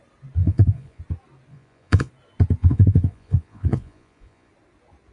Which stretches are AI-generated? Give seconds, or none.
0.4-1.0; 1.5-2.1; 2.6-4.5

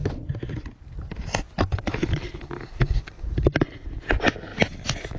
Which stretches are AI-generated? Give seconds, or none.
3.1-4.5

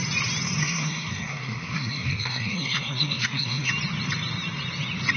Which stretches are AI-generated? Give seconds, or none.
0.6-3.7

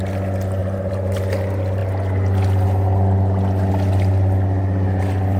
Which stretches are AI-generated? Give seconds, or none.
0.6-1.1